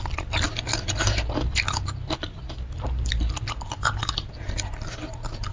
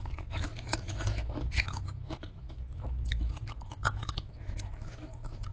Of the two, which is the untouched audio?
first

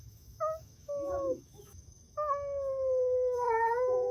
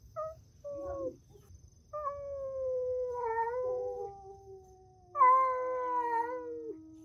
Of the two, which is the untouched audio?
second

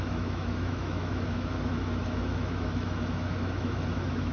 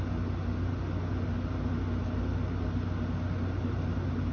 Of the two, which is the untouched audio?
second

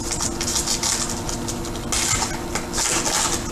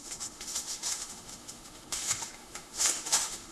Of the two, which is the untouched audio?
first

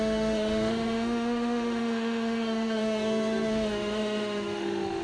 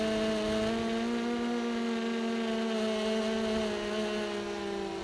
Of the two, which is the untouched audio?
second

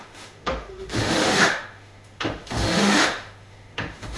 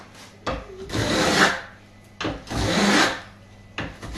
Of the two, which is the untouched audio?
second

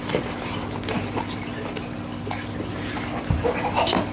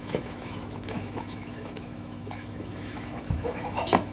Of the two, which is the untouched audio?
first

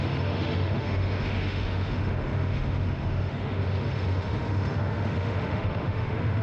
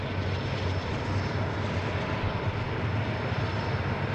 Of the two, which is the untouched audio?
second